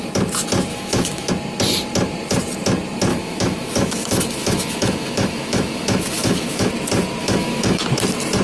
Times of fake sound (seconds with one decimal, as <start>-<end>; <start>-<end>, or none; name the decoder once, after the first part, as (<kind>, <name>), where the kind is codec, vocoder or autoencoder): 0.7-1.3 (autoencoder, DAC-VAE); 3.1-6.7; 7.2-7.8